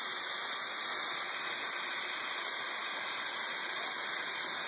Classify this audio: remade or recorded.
recorded